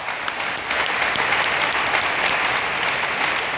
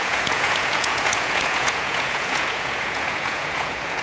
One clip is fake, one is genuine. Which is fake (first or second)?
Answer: second